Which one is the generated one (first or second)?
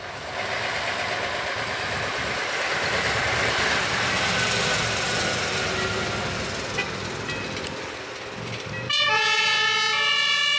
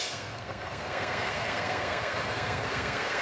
second